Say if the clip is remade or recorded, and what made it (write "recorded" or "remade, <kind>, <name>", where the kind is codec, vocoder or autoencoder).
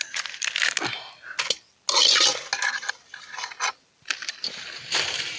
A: recorded